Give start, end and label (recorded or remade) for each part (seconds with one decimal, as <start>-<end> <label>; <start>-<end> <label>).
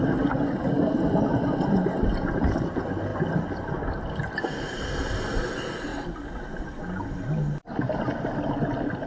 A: 0.0-9.1 recorded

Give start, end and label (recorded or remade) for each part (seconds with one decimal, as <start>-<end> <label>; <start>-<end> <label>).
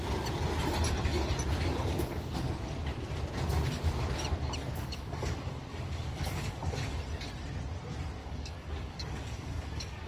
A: 0.0-1.9 recorded; 1.9-2.5 remade; 2.5-4.6 recorded; 4.6-7.0 remade; 7.0-8.2 recorded; 8.2-10.1 remade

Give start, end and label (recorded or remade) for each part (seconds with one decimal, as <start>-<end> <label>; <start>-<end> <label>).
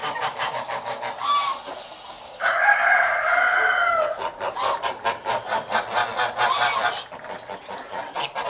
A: 0.0-1.0 remade; 1.0-2.1 recorded; 2.1-2.6 remade; 2.6-8.5 recorded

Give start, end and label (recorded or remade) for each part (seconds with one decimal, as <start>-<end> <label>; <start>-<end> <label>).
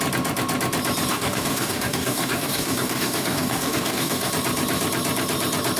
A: 0.0-1.1 recorded; 1.1-4.3 remade; 4.3-5.8 recorded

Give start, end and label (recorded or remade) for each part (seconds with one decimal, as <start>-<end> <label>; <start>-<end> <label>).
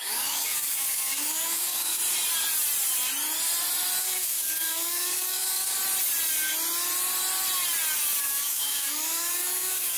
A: 0.0-2.0 remade; 2.0-4.0 recorded; 4.0-5.8 remade; 5.8-8.2 recorded; 8.2-10.0 remade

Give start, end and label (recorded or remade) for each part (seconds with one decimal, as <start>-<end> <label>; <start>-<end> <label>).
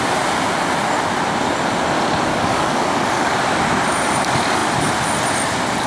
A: 0.0-2.3 recorded; 2.3-3.4 remade; 3.4-5.9 recorded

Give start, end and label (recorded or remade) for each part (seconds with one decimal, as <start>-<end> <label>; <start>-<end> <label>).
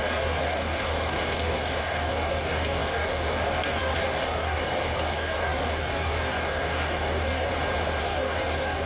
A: 0.0-7.5 remade; 7.5-8.0 recorded; 8.0-8.9 remade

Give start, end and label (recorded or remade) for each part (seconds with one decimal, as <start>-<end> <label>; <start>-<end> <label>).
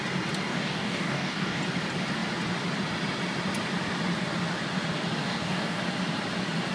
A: 0.0-0.5 recorded; 0.5-1.6 remade; 1.6-5.2 recorded; 5.2-5.8 remade; 5.8-6.7 recorded